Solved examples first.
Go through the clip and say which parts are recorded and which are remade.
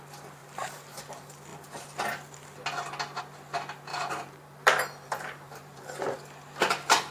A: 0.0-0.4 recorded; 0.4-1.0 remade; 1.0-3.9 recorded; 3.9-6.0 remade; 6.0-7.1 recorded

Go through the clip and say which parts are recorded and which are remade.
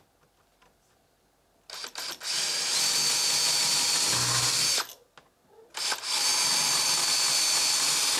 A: 0.0-6.2 recorded; 6.2-7.4 remade; 7.4-8.2 recorded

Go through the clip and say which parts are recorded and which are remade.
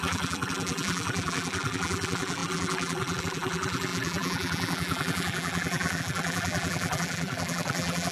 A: 0.0-8.1 remade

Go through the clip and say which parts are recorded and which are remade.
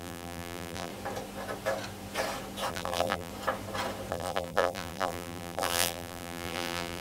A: 0.0-0.9 remade; 0.9-2.7 recorded; 2.7-3.3 remade; 3.3-4.1 recorded; 4.1-7.0 remade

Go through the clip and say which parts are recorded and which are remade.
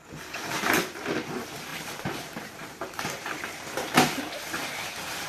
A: 0.0-1.7 recorded; 1.7-5.3 remade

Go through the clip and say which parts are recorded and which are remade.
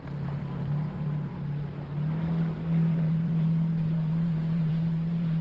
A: 0.0-1.3 remade; 1.3-2.9 recorded; 2.9-5.4 remade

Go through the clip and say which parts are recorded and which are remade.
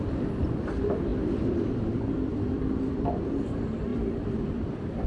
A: 0.0-5.1 remade